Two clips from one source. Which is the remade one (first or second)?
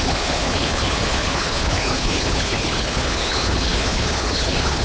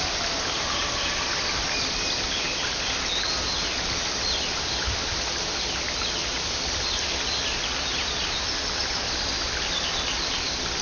first